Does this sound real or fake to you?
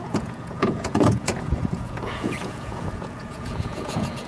fake